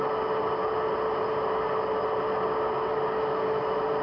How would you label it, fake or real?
real